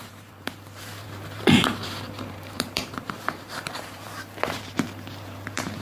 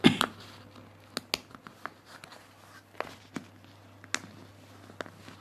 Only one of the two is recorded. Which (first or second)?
second